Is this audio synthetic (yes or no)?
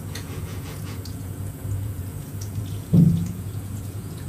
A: yes